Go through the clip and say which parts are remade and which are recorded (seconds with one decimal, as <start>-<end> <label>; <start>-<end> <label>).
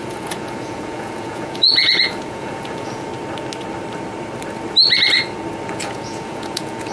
0.0-3.1 remade; 3.1-5.7 recorded; 5.7-6.9 remade